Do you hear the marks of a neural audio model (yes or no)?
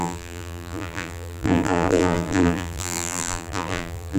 yes